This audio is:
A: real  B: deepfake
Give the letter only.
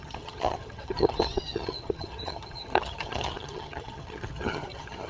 B